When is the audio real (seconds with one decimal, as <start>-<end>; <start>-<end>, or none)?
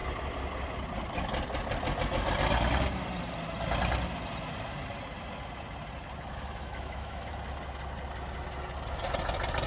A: 0.0-6.3; 7.3-9.7